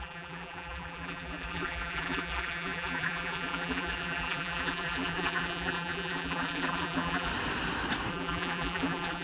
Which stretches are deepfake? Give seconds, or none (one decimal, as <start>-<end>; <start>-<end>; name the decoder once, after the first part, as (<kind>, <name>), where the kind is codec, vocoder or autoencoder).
0.0-7.3 (vocoder, BigVGAN v2); 8.1-9.2